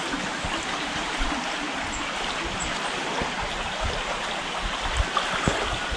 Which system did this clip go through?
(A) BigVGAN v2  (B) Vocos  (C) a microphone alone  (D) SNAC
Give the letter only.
C